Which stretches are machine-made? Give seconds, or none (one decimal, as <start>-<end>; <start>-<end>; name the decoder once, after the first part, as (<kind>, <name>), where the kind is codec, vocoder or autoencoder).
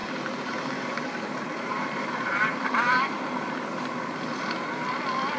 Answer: 0.0-3.2 (vocoder, BigVGAN v2)